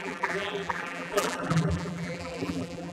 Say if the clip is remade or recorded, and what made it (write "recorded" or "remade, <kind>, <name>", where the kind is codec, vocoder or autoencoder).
remade, vocoder, BigVGAN v2